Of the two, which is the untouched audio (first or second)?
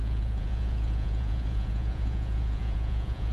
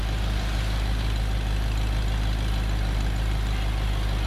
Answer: second